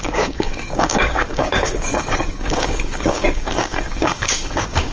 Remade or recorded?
remade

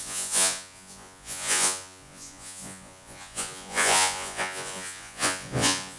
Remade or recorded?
remade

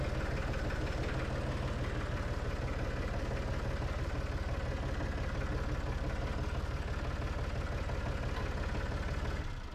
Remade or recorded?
recorded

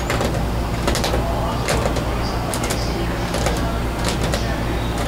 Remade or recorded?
recorded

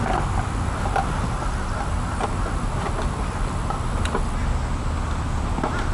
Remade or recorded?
recorded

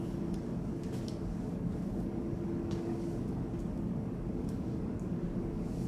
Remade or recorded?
remade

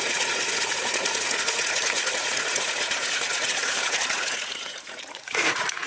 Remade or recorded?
remade